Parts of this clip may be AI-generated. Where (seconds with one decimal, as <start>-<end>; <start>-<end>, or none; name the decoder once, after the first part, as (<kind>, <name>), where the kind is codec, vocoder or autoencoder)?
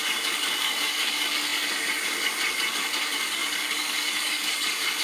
0.0-5.0 (codec, DAC)